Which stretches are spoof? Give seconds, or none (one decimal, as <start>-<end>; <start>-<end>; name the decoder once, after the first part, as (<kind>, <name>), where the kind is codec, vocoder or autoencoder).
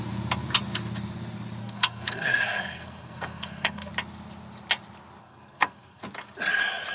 1.6-3.9 (codec, SNAC); 5.2-6.0